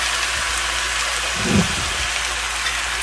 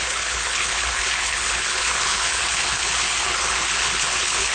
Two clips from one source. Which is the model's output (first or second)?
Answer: second